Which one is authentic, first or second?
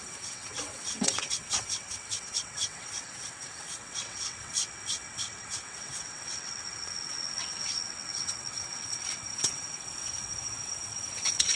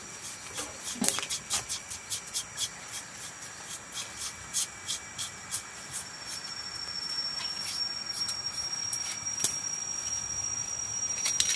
second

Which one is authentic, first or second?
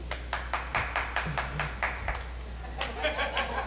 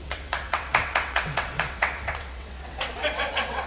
first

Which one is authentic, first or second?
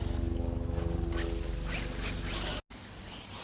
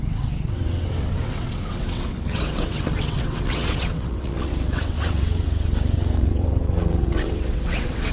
first